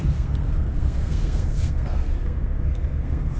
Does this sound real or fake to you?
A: fake